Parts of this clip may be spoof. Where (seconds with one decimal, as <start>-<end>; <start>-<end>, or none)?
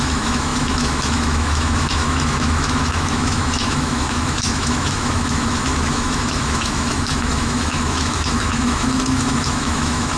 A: 0.0-10.2